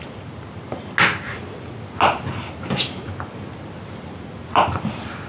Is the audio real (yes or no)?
yes